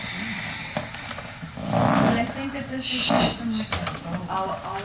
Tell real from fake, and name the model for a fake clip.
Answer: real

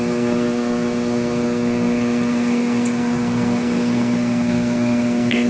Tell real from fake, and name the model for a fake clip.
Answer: fake, codec, SNAC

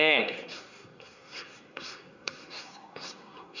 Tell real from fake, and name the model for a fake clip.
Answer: fake, codec, SNAC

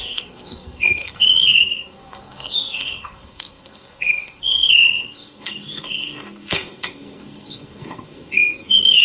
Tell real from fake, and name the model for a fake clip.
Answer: fake, codec, SNAC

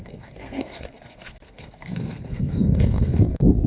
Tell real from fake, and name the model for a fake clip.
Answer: fake, codec, SNAC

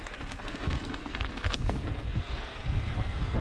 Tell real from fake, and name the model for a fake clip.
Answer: fake, codec, SNAC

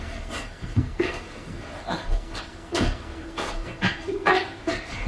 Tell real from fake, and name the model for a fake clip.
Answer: fake, codec, SNAC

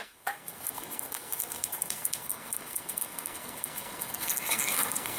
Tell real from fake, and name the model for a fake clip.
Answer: fake, codec, SNAC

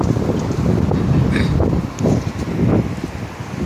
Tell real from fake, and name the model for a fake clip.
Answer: real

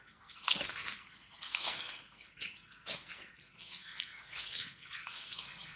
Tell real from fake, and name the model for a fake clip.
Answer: fake, codec, SNAC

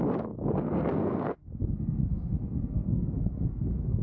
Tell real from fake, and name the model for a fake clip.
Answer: fake, codec, SNAC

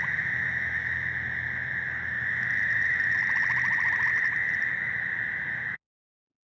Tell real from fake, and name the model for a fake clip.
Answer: real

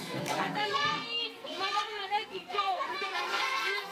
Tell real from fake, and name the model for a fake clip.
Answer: fake, codec, SNAC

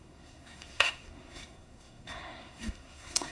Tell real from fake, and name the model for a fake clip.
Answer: fake, codec, SNAC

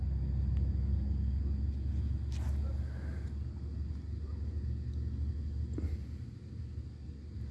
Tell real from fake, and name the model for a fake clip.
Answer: real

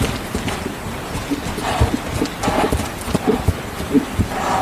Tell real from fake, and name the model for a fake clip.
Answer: real